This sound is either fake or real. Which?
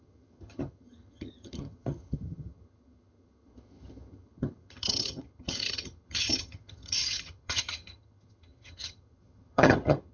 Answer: fake